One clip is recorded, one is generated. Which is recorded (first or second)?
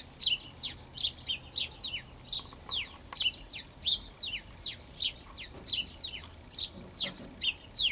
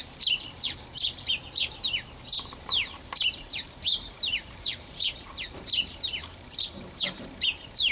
first